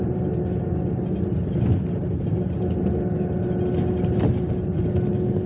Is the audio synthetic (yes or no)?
no